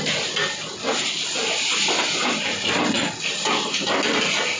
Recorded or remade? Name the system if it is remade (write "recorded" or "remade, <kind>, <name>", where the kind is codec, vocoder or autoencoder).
recorded